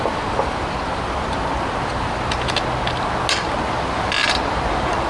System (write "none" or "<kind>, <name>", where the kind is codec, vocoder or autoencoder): none